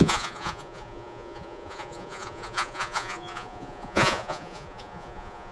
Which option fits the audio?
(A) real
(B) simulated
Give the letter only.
B